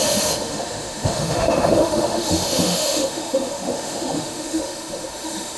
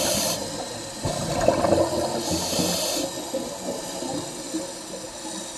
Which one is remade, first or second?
first